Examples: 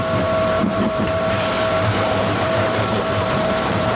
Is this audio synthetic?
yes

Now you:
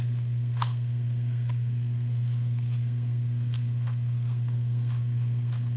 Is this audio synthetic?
yes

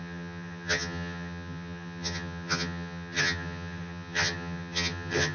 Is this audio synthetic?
yes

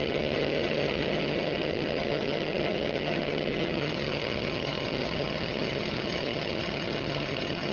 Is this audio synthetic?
yes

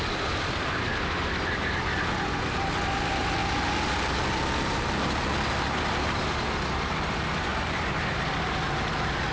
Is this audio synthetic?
no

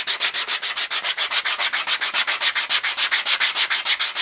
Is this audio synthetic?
no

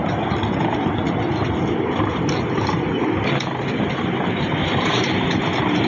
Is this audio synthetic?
no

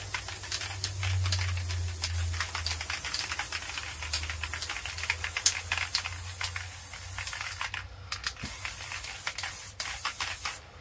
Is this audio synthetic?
no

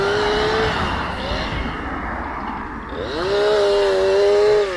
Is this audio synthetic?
no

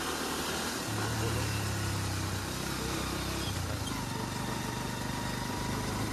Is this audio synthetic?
no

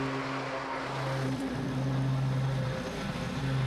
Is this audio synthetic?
no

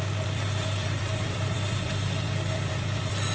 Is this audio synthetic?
yes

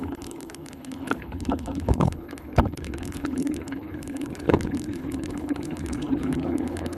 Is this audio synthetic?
yes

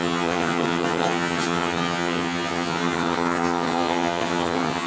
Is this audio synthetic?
yes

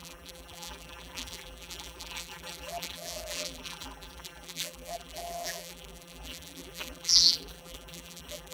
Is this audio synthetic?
yes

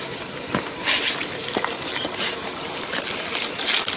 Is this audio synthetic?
no